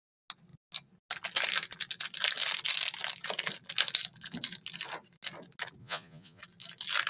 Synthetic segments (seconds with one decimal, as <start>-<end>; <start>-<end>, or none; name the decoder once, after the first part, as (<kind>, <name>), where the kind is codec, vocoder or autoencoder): 5.8-6.4 (vocoder, Vocos)